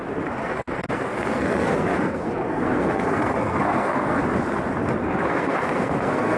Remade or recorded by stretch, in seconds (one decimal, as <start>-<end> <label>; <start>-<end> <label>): 0.0-0.4 recorded; 0.4-4.2 remade; 4.2-5.0 recorded; 5.0-6.4 remade